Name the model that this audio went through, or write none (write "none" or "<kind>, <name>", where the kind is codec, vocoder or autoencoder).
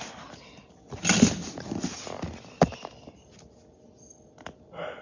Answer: none